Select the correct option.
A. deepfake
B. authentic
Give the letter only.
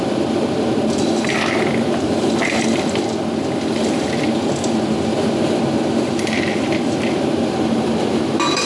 A